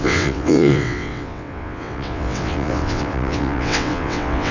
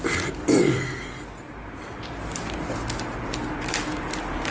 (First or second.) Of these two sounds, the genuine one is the second